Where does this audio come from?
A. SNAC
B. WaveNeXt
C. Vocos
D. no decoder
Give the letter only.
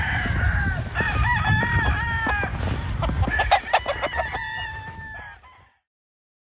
D